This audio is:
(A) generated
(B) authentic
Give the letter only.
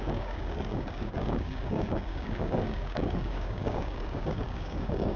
A